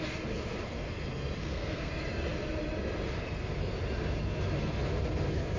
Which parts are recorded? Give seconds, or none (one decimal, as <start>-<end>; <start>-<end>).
0.0-1.4; 1.9-5.6

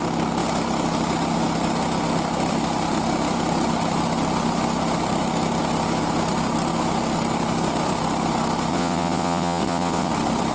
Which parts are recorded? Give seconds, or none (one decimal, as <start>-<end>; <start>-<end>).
0.0-8.7; 10.1-10.5